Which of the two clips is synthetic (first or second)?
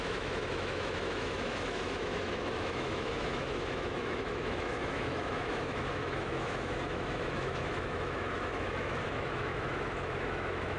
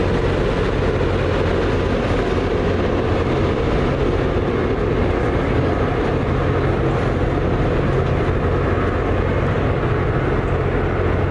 first